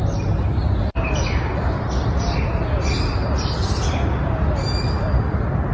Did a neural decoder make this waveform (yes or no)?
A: no